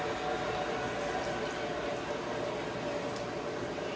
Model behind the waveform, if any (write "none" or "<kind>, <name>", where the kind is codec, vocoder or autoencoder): none